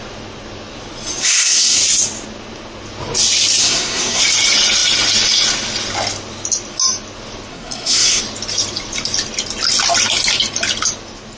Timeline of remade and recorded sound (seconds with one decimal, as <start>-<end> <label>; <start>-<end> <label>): 0.0-1.2 recorded; 1.2-1.8 remade; 1.8-3.6 recorded; 3.6-4.2 remade; 4.2-7.5 recorded; 7.5-8.2 remade; 8.2-11.4 recorded